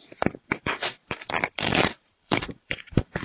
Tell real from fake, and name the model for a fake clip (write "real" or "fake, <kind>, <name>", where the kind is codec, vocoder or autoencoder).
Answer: fake, vocoder, BigVGAN v2